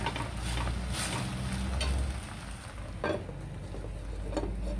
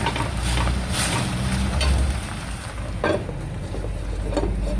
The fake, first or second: second